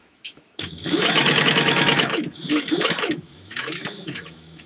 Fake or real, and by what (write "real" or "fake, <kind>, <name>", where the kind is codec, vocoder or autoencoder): fake, autoencoder, DAC-VAE